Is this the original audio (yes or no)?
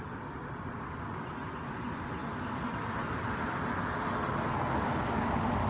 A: yes